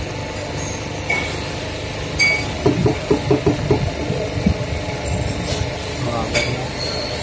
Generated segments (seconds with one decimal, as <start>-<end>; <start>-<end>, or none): none

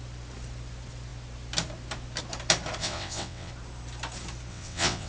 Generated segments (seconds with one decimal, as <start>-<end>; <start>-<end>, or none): 2.8-3.5; 4.5-5.1

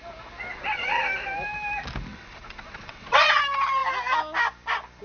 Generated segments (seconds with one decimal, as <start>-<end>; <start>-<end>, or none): 0.5-1.0; 2.1-3.4

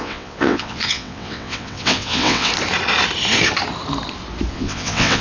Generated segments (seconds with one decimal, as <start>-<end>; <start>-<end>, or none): 0.0-2.5; 4.5-5.2

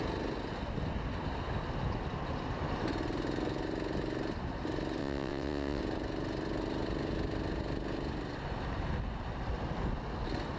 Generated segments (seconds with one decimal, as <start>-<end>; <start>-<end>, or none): 5.0-5.8